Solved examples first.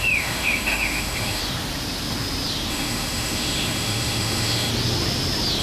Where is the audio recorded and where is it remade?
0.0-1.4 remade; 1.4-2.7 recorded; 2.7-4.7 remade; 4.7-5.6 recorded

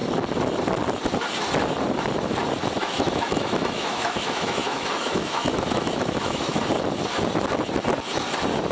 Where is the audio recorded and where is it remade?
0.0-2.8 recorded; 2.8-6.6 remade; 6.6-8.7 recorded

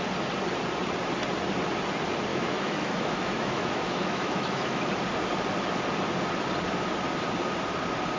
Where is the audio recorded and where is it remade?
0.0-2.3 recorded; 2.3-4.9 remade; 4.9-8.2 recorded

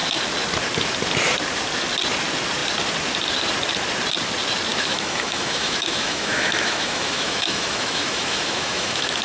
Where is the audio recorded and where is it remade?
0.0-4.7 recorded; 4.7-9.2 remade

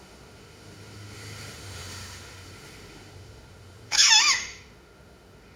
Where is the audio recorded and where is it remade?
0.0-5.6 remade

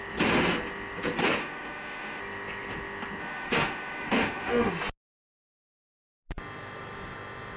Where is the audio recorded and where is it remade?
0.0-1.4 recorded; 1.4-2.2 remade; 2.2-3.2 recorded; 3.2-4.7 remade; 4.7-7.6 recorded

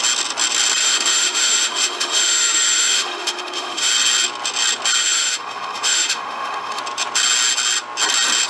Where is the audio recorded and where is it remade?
0.0-0.8 recorded; 0.8-3.9 remade; 3.9-5.0 recorded; 5.0-6.8 remade; 6.8-8.5 recorded